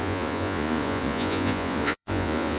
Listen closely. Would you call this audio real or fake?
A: fake